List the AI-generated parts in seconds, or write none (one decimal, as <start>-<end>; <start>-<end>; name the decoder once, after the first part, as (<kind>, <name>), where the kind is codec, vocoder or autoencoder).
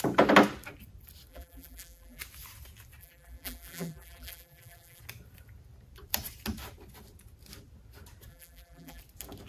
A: 1.3-2.2 (vocoder, BigVGAN v2); 3.0-5.0; 8.3-9.0